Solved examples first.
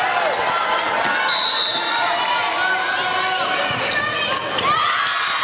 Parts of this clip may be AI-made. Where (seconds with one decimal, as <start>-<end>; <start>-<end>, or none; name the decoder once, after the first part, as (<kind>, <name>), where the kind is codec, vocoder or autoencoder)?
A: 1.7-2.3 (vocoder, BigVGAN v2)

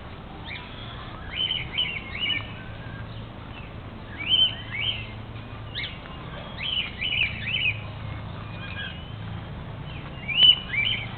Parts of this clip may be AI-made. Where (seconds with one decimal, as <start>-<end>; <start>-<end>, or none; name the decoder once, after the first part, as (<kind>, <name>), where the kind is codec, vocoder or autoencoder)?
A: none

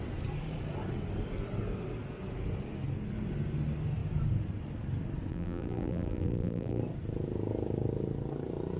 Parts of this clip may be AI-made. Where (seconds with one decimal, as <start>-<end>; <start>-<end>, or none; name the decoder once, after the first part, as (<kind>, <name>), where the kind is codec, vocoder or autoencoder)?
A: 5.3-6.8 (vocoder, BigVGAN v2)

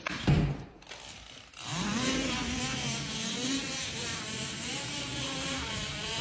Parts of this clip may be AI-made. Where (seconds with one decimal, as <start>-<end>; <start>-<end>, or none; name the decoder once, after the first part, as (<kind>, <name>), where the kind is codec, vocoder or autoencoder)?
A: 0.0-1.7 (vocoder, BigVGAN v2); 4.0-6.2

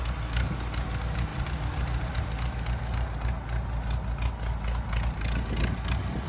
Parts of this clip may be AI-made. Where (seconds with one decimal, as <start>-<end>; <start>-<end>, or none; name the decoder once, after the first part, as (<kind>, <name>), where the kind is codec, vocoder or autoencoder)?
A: 1.3-2.2 (vocoder, BigVGAN v2)

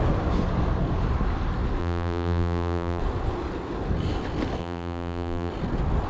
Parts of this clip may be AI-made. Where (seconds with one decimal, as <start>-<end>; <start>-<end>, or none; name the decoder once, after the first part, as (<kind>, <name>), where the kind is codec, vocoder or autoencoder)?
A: 1.8-3.0 (vocoder, BigVGAN v2); 4.6-5.5